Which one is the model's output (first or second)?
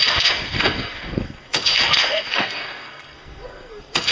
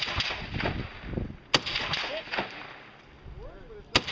first